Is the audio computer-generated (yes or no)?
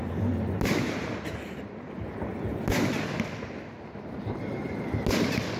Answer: no